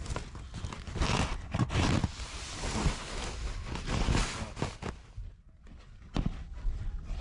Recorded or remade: recorded